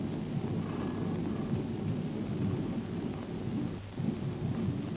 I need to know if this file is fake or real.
real